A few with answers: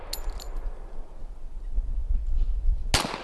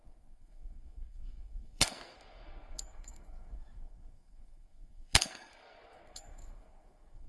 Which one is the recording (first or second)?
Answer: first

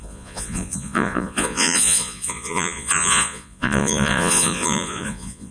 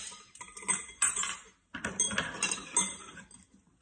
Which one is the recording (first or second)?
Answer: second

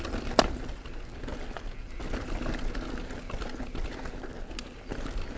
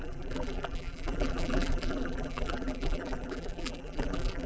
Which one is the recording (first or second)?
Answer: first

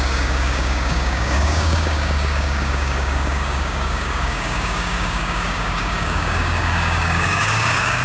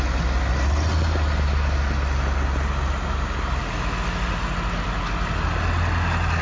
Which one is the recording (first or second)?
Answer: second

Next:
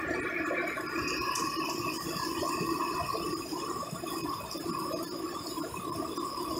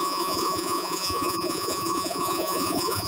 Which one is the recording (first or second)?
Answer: first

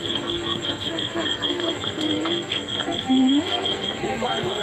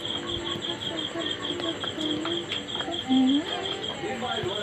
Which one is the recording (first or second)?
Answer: second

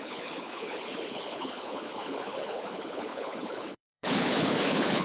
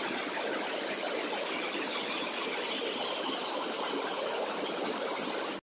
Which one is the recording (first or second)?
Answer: second